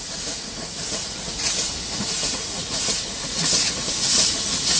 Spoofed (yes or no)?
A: yes